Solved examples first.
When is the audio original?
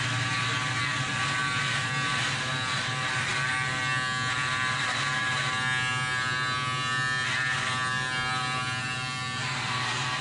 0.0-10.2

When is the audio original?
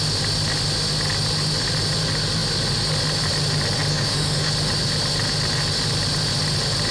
0.0-3.9; 4.5-6.9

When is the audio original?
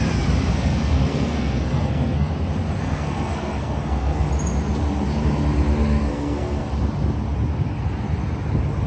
0.0-0.5; 2.3-2.8; 4.3-6.1; 6.7-8.9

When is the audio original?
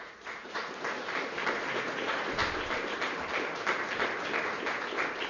0.6-1.7; 2.4-5.3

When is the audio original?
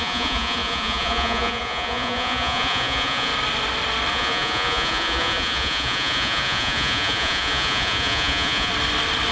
3.3-4.1; 8.7-9.3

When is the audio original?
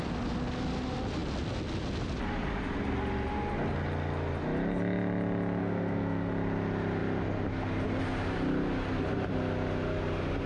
0.0-5.6; 6.3-10.5